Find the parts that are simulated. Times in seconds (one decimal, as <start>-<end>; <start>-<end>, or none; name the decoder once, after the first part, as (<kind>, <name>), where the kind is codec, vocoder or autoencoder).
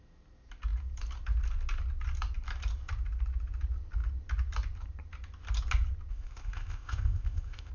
6.1-7.7 (codec, ZipCodec)